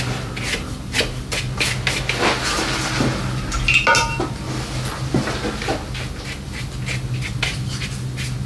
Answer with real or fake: real